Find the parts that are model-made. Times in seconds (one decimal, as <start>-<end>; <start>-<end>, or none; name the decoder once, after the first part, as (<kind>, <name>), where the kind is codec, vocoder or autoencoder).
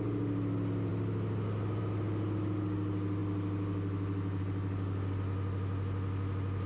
none